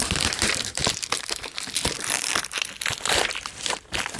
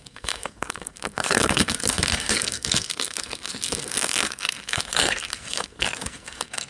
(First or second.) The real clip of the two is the first